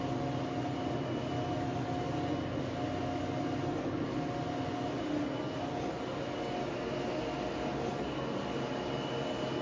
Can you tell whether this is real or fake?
real